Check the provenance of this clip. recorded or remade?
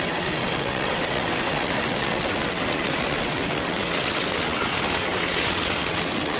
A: remade